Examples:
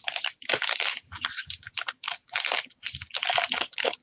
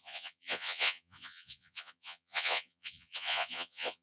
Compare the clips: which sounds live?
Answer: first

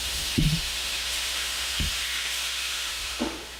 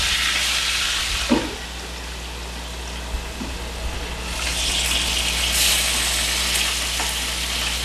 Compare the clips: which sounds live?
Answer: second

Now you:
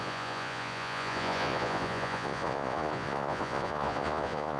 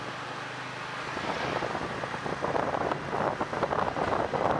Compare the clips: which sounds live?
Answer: second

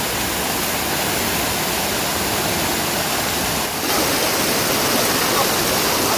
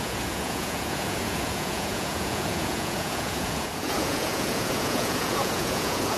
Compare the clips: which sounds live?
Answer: first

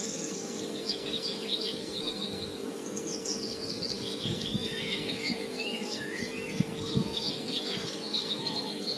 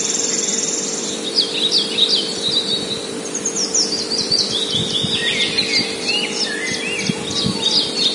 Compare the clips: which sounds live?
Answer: second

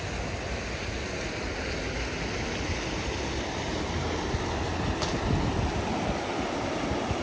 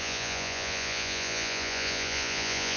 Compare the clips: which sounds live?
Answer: first